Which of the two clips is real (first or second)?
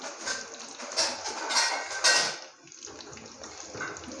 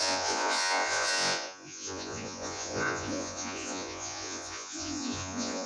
first